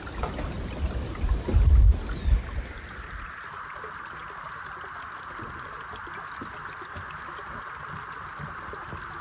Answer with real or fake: real